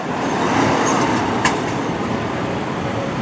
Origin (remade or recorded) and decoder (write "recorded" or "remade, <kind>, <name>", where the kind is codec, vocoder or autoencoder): remade, vocoder, BigVGAN v2